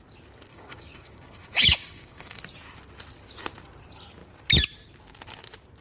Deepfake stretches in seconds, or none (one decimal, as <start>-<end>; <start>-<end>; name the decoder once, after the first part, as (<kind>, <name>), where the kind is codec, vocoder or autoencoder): 0.5-2.4 (codec, DAC)